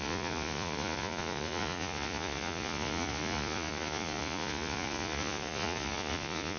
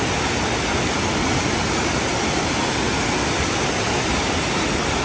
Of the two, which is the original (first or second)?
second